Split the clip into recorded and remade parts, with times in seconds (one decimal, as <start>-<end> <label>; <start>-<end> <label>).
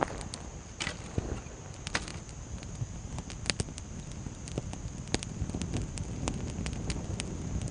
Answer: 0.0-0.5 recorded; 0.5-1.2 remade; 1.2-7.7 recorded